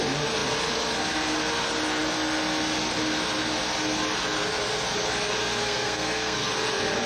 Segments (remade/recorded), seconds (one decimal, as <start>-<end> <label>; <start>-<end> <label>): 0.0-5.4 recorded; 5.4-6.5 remade; 6.5-7.1 recorded

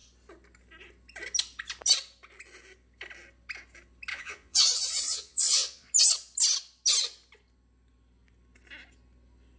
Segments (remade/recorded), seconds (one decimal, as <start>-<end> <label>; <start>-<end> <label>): 0.0-4.1 recorded; 4.1-5.9 remade; 5.9-9.6 recorded

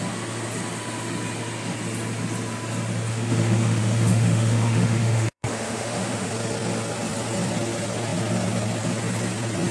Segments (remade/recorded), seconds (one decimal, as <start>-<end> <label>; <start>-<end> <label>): 0.0-3.1 recorded; 3.1-6.3 remade; 6.3-9.7 recorded

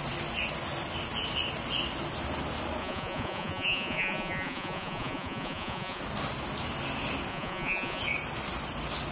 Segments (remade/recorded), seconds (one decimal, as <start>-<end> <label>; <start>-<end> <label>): 0.0-2.8 recorded; 2.8-6.0 remade; 6.0-7.3 recorded; 7.3-8.0 remade; 8.0-9.1 recorded